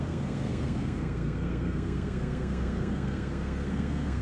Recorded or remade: remade